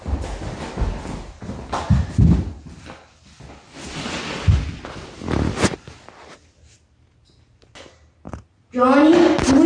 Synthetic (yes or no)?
no